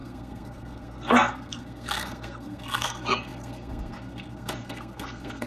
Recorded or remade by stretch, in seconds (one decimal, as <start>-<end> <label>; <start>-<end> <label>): 0.0-5.5 remade